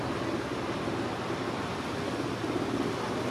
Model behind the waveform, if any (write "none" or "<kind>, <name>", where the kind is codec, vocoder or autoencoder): none